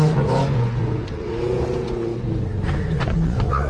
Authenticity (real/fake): fake